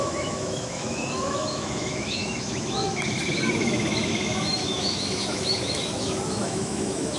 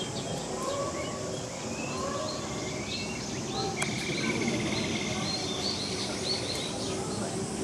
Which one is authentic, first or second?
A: second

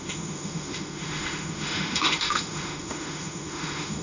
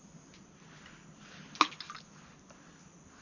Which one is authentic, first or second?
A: second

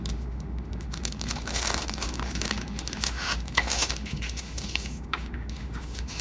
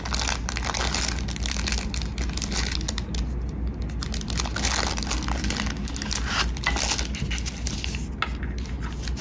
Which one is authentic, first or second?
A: second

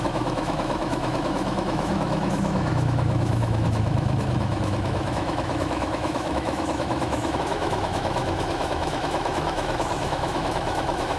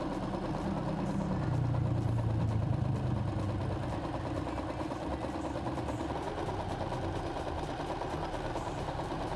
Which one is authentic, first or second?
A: second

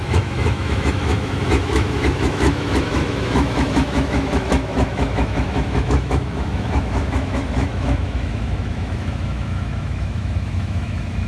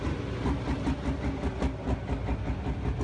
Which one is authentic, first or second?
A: second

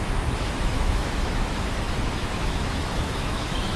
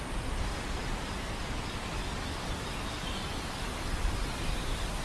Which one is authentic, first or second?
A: second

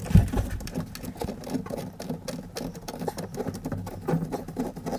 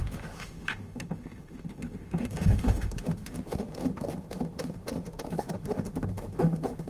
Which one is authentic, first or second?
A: first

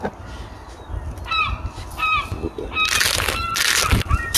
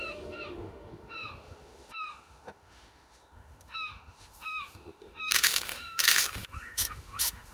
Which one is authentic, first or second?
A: first